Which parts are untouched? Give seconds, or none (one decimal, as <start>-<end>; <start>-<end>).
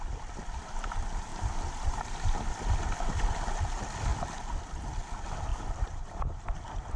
0.0-1.3; 2.0-5.5; 6.4-7.0